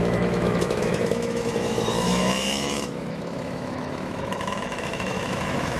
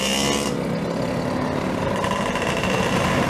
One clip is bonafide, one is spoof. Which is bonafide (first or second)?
second